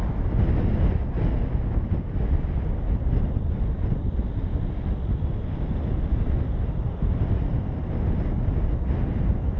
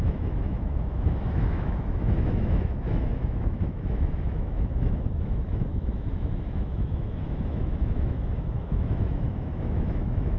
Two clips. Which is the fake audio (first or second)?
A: second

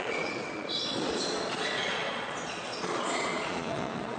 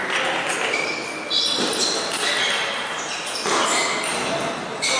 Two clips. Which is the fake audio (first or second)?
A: first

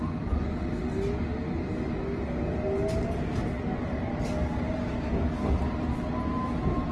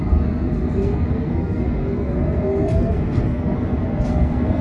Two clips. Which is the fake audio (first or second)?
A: second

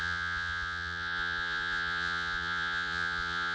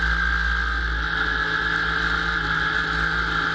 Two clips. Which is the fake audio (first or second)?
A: first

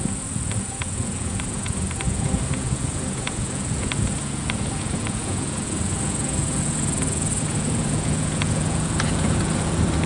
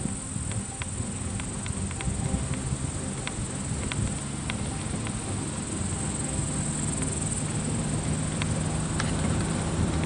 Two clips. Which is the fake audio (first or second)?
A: first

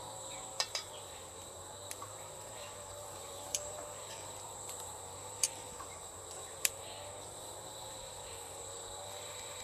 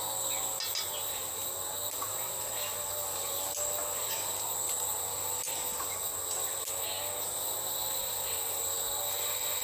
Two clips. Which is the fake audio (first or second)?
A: first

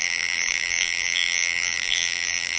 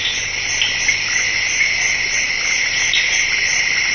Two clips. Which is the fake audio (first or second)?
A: first